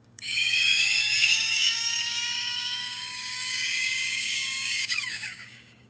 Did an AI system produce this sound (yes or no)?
yes